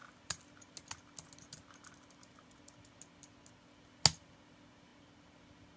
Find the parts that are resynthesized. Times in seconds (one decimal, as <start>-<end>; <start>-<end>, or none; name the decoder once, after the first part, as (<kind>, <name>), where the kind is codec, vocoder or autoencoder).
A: none